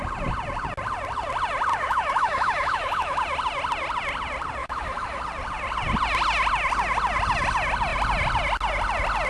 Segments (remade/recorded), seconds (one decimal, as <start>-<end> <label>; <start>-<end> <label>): 0.0-1.7 recorded; 1.7-3.2 remade; 3.2-4.6 recorded; 4.6-5.2 remade; 5.2-9.3 recorded